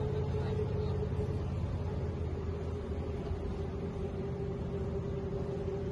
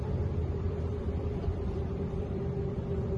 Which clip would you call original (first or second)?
first